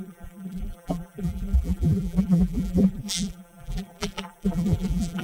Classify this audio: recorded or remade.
remade